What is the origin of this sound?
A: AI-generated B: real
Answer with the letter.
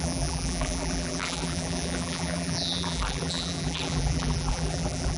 A